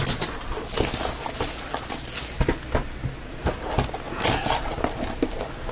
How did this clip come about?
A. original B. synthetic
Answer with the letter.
A